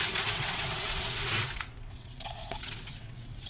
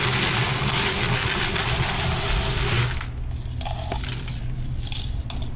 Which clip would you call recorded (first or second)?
second